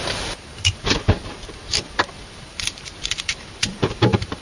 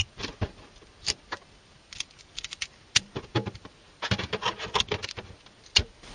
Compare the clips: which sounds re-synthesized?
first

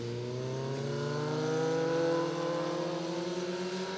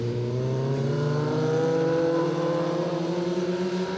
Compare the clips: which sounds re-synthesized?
second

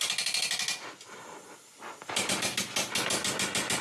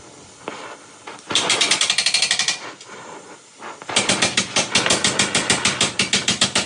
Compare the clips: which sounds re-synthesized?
second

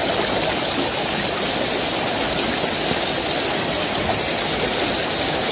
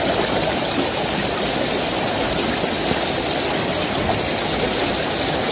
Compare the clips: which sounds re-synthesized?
second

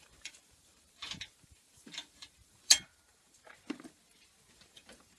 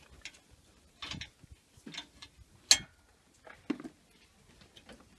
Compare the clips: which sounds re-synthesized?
first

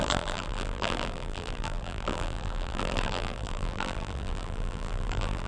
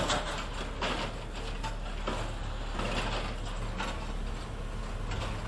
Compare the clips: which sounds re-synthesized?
first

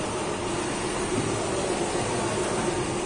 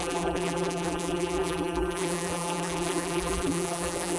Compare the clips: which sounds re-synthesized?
second